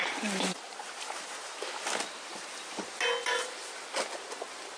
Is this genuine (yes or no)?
yes